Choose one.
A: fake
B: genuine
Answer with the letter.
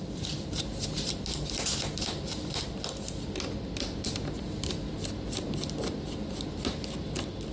B